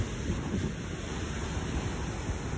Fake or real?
real